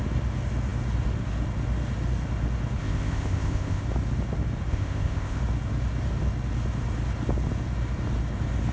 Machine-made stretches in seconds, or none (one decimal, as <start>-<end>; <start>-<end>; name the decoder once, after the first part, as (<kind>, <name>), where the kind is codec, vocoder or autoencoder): 2.8-3.8 (codec, ZipCodec); 4.7-5.4